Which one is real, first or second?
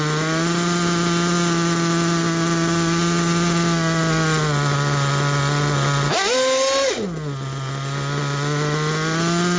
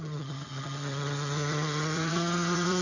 first